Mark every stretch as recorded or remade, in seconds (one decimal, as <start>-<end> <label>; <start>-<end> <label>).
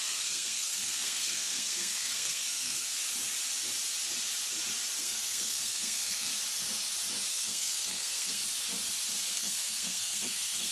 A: 0.0-3.0 remade; 3.0-5.0 recorded; 5.0-6.3 remade; 6.3-7.3 recorded; 7.3-8.4 remade; 8.4-9.3 recorded; 9.3-10.7 remade